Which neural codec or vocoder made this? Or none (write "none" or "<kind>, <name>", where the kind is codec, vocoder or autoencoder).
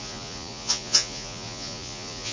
vocoder, Vocos